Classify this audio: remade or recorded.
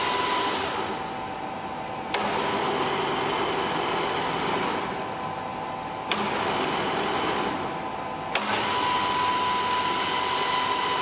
recorded